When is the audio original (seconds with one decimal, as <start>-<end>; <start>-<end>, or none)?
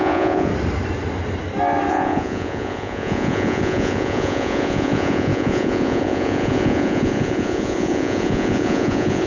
0.5-1.9